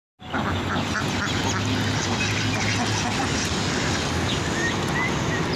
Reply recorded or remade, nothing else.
recorded